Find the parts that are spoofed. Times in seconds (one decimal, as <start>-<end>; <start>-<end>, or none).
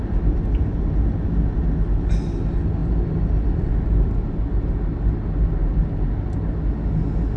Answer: none